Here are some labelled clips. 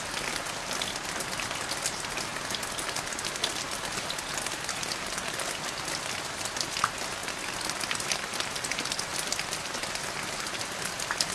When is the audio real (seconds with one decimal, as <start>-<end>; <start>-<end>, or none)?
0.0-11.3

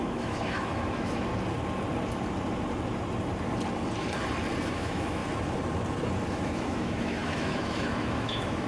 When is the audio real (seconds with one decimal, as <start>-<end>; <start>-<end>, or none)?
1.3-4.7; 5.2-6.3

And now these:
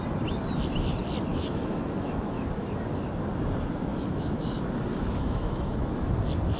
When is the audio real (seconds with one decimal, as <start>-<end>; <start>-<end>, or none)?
0.0-1.3; 2.7-4.9; 6.1-6.6

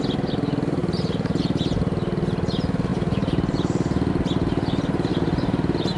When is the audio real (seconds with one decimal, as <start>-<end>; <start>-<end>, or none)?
0.0-0.8; 1.4-2.9; 4.1-5.1

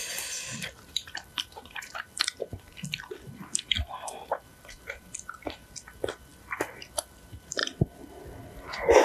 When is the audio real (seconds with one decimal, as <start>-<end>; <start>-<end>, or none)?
none

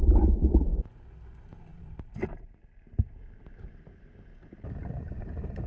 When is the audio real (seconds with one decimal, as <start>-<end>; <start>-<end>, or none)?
0.0-5.7